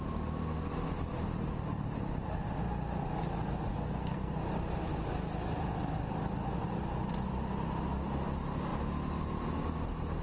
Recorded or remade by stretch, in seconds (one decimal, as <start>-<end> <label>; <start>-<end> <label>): 0.0-3.7 recorded; 3.7-4.4 remade; 4.4-10.2 recorded